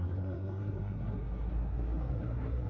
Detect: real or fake fake